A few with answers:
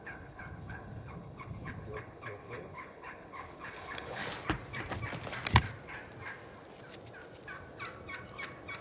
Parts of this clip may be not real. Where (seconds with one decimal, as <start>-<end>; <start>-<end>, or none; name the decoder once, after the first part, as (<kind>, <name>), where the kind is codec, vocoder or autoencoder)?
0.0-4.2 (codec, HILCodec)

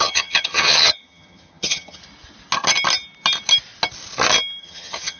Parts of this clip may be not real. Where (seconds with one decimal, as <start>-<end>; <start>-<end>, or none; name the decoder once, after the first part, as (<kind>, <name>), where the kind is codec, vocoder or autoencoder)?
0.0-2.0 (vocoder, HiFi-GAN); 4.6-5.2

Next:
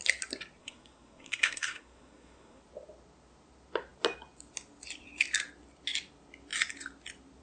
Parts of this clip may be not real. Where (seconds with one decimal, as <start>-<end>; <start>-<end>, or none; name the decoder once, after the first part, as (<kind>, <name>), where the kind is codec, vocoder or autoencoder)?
0.6-2.6 (codec, SNAC)

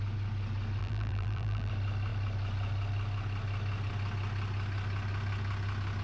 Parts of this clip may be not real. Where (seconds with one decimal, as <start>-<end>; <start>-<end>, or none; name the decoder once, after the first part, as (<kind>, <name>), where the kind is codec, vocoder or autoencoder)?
0.8-1.7 (vocoder, BigVGAN v2)

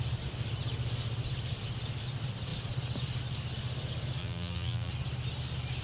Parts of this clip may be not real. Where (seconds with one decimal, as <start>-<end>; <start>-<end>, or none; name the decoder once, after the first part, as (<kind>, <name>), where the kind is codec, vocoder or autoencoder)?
4.2-4.9 (vocoder, BigVGAN v2)

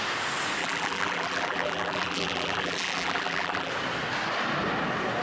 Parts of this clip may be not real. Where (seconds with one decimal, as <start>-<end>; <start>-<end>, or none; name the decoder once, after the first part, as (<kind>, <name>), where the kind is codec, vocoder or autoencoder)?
0.6-3.7 (vocoder, BigVGAN v2)

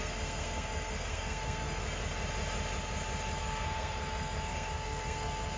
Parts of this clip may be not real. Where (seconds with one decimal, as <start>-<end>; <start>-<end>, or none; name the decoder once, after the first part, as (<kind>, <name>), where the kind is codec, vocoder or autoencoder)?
0.0-1.8 (codec, SNAC); 3.4-5.6

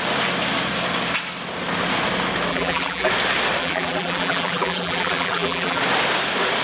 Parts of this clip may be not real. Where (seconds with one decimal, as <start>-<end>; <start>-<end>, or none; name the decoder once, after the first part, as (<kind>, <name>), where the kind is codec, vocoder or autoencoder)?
2.5-3.1 (vocoder, BigVGAN v2); 3.6-5.8